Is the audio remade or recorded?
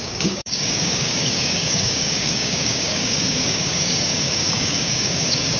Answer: remade